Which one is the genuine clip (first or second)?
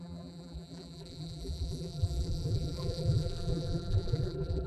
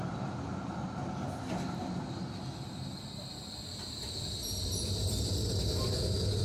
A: second